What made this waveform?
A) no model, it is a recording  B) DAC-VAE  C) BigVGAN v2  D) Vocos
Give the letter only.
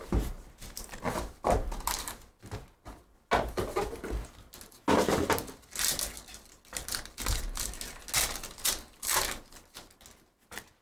A